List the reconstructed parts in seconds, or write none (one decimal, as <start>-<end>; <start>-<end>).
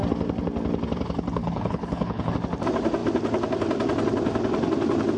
1.4-2.3